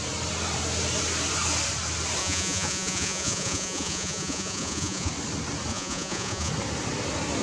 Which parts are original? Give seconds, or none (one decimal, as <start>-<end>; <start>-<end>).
0.0-2.2; 5.1-5.7; 6.5-7.4